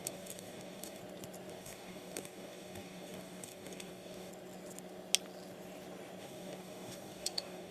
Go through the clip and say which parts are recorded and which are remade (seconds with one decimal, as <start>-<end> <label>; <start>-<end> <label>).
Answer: 0.0-1.0 remade; 1.0-1.5 recorded; 1.5-4.3 remade; 4.3-6.2 recorded; 6.2-7.7 remade